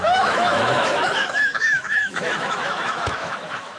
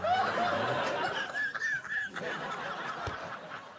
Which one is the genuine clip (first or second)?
second